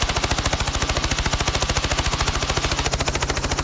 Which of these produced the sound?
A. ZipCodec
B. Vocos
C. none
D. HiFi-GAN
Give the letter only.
C